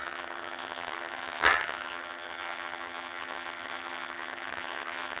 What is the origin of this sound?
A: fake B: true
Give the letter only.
A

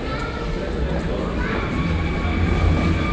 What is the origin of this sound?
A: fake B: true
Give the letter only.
B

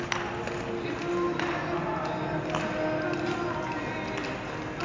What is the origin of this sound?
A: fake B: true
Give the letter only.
B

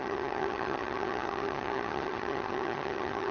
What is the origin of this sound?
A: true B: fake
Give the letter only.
B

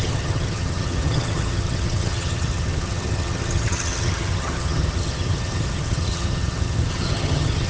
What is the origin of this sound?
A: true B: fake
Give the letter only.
B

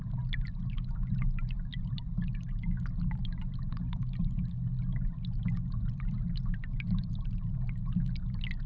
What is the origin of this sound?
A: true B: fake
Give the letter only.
A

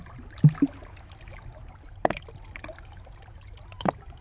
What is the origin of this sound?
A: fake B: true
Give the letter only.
B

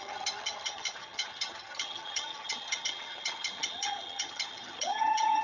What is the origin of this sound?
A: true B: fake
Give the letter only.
B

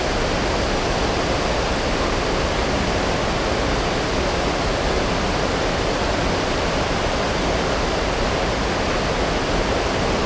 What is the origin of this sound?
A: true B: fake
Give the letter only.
A